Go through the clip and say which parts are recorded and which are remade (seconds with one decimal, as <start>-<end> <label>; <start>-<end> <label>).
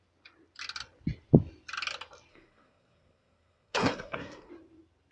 0.0-2.3 recorded; 2.3-4.5 remade; 4.5-5.1 recorded